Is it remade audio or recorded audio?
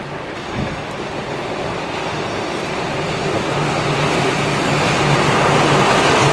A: recorded